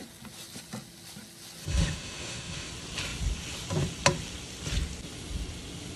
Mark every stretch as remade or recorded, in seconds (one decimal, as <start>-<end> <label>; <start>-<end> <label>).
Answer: 0.0-1.6 recorded; 1.6-2.7 remade; 2.7-6.0 recorded